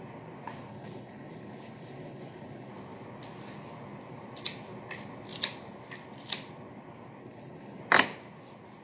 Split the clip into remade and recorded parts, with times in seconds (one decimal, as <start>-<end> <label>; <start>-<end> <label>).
0.0-0.7 recorded; 0.7-2.7 remade; 2.7-7.2 recorded; 7.2-7.8 remade; 7.8-8.8 recorded